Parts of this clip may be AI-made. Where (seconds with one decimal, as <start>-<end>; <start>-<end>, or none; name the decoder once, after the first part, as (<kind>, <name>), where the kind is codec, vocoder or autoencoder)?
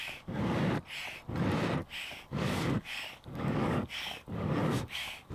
0.0-0.7 (codec, DAC); 1.8-5.3